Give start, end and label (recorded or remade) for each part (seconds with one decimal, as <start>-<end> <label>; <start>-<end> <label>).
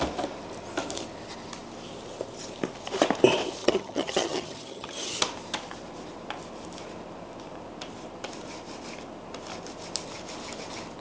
0.0-3.6 recorded; 3.6-5.2 remade; 5.2-11.0 recorded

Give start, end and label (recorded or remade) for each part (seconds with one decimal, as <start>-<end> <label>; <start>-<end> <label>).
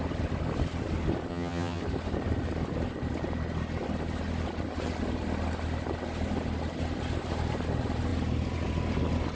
0.0-1.3 recorded; 1.3-1.8 remade; 1.8-9.4 recorded